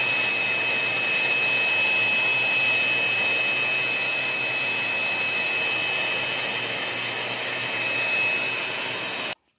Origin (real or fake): real